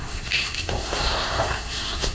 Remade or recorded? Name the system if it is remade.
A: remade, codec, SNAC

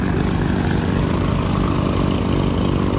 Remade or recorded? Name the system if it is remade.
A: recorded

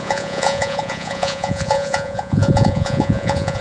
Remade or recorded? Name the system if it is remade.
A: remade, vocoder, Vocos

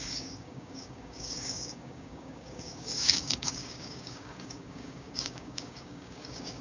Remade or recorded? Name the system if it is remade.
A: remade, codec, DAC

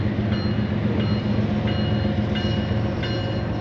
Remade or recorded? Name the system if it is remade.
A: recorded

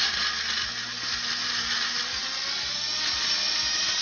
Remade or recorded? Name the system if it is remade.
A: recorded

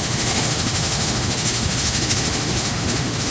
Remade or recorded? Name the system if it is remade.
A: remade, autoencoder, DAC-VAE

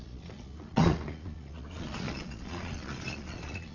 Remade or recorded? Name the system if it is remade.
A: remade, vocoder, Vocos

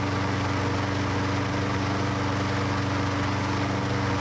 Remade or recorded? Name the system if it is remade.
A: recorded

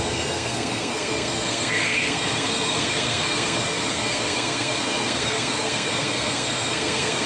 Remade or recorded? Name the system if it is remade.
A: remade, codec, SNAC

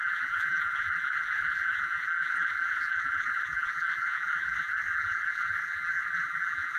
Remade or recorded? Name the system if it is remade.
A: remade, vocoder, BigVGAN v2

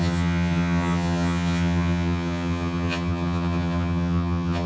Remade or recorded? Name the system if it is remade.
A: remade, vocoder, HiFi-GAN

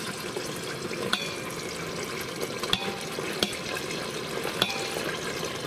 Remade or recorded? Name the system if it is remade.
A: recorded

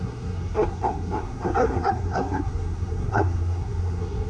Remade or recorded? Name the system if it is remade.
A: remade, codec, SNAC